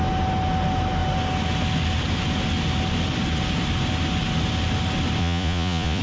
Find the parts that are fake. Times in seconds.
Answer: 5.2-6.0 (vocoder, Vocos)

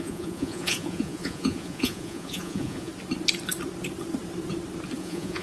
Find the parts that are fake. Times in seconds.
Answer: 0.0-2.9 (vocoder, Vocos); 5.0-5.4